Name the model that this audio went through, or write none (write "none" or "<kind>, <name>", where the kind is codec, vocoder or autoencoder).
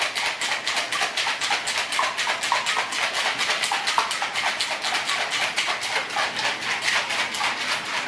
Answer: none